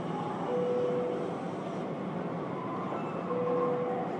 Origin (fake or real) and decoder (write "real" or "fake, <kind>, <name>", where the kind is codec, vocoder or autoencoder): real